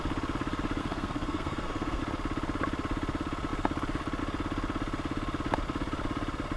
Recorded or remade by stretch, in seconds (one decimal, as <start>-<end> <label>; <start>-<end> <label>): 0.0-0.8 recorded; 0.8-2.0 remade; 2.0-6.6 recorded